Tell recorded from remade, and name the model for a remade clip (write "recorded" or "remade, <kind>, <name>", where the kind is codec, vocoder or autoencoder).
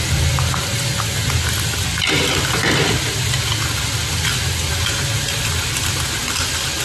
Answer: recorded